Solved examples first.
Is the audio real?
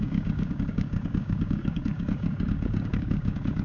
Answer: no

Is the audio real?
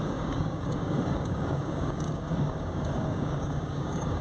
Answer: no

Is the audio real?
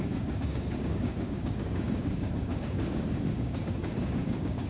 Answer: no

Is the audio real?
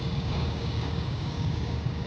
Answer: no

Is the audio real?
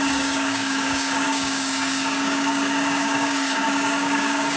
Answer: no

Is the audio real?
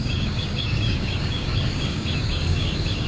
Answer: no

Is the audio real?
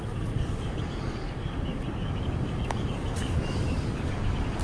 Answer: no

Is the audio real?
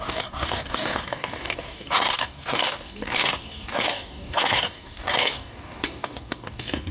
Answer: no